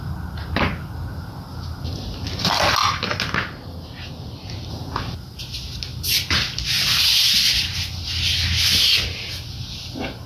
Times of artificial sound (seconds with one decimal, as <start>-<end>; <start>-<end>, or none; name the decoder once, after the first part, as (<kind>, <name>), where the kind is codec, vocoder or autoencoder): none